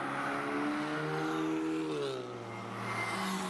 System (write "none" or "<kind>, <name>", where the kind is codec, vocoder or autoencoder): none